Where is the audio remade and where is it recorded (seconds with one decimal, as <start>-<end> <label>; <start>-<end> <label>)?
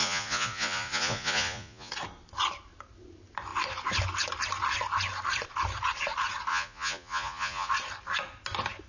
0.0-1.9 remade; 1.9-6.5 recorded; 6.5-7.7 remade; 7.7-8.9 recorded